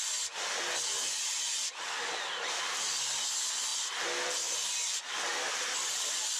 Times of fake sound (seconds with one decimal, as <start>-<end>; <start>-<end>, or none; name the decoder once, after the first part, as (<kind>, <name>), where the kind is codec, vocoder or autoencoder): none